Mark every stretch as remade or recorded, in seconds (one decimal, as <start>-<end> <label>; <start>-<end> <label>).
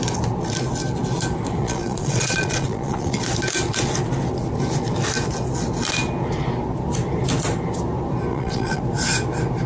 0.0-1.6 recorded; 1.6-3.2 remade; 3.2-8.3 recorded; 8.3-8.8 remade; 8.8-9.7 recorded